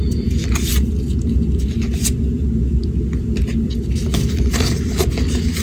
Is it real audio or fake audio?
real